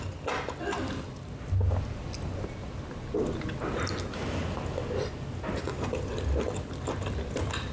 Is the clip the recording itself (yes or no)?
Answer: yes